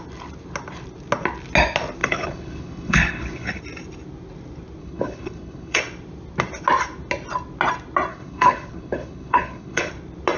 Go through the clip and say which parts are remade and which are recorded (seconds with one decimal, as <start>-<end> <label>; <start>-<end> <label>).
0.0-2.0 recorded; 2.0-3.6 remade; 3.6-4.8 recorded; 4.8-5.8 remade; 5.8-8.1 recorded; 8.1-9.9 remade; 9.9-10.4 recorded